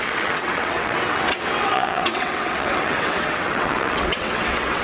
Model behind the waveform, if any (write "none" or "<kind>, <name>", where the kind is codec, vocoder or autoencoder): vocoder, WaveNeXt